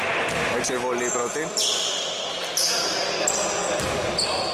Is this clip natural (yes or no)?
yes